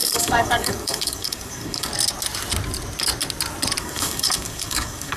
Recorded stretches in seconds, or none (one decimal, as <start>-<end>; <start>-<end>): 1.9-3.8